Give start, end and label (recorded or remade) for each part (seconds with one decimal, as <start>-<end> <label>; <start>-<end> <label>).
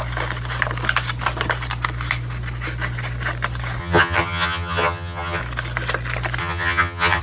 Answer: 0.0-3.8 recorded; 3.8-5.4 remade; 5.4-6.4 recorded; 6.4-7.2 remade